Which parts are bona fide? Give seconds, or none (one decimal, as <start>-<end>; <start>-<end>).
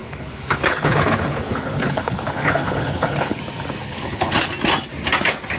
3.4-3.8; 4.5-5.6